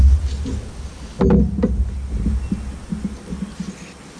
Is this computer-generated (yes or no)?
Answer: no